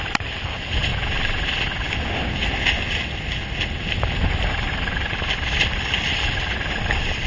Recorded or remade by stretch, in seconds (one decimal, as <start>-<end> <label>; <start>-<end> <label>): 0.0-0.9 remade; 0.9-4.7 recorded; 4.7-7.3 remade